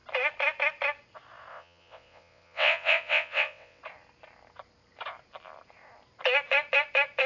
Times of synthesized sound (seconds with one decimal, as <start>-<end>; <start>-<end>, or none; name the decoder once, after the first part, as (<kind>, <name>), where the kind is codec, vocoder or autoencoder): 1.5-3.8 (vocoder, WaveNeXt)